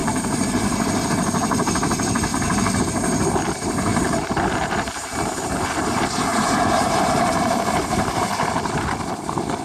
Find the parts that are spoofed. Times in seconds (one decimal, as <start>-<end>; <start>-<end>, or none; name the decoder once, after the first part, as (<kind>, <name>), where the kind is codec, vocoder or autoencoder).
0.0-0.9 (vocoder, BigVGAN v2); 2.3-2.8; 3.9-5.5; 6.3-8.6